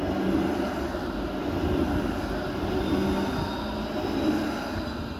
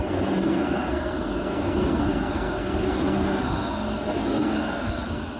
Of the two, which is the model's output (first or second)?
second